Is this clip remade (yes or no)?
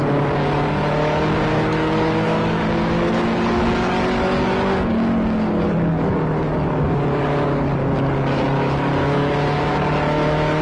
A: yes